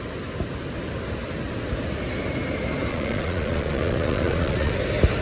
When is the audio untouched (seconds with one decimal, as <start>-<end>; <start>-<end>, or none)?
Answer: 0.0-2.9; 4.8-5.2